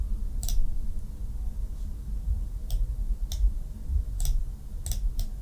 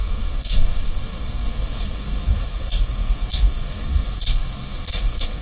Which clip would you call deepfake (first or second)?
second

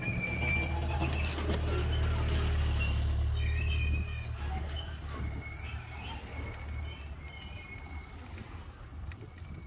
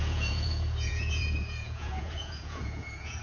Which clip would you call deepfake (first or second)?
second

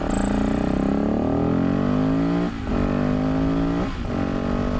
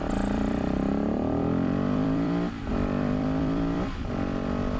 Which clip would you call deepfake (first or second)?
second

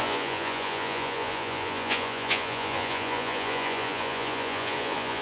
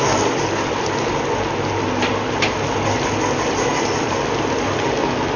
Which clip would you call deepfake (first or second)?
first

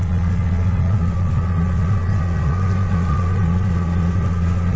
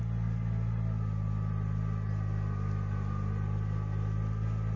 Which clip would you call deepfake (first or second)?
first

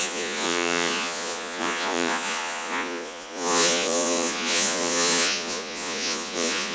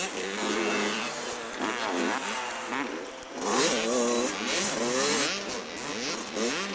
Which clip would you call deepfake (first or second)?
first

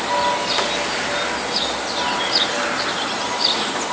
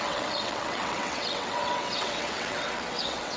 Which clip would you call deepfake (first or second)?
second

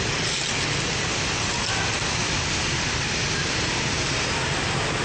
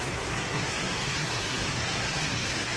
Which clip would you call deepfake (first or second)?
second